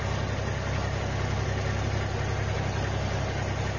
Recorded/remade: recorded